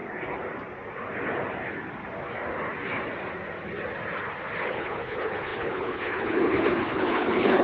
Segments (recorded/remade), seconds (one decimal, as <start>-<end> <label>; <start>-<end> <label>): 0.0-4.6 recorded; 4.6-7.6 remade